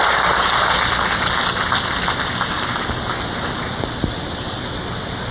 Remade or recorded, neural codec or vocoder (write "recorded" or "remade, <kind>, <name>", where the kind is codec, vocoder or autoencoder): recorded